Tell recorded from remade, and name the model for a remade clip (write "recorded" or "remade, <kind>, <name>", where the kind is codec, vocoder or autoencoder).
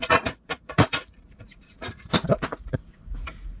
remade, vocoder, Vocos